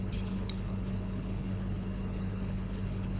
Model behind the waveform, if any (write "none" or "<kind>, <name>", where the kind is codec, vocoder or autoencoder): codec, HILCodec